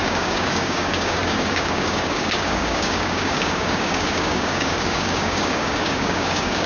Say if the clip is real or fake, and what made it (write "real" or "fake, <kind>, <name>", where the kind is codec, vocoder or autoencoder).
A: fake, codec, DAC